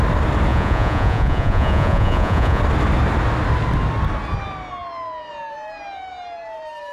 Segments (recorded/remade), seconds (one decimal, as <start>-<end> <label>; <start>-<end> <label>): 0.0-0.5 recorded; 0.5-2.6 remade; 2.6-6.9 recorded